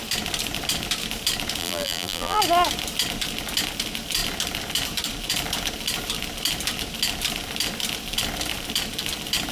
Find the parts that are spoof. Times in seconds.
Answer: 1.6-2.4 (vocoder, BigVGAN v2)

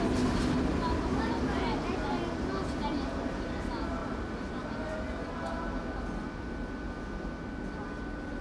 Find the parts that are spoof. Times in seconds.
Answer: none

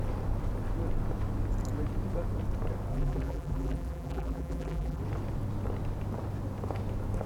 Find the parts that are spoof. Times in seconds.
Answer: 2.9-5.0 (vocoder, BigVGAN v2)

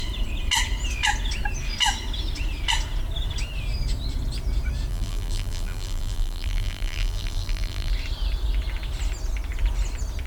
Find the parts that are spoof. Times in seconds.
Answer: 4.9-7.9 (vocoder, BigVGAN v2)

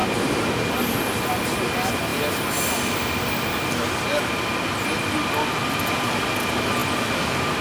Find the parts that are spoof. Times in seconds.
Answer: 0.0-0.9 (vocoder, BigVGAN v2)

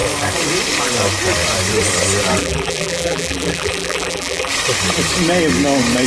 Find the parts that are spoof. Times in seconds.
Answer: 2.4-4.5 (vocoder, BigVGAN v2)

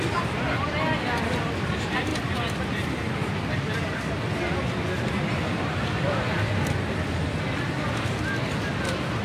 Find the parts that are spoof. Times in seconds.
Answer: 5.4-6.6 (vocoder, BigVGAN v2)

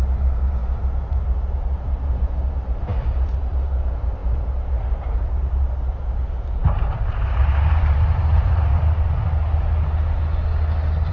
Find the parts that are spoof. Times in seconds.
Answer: 0.0-8.7 (vocoder, BigVGAN v2)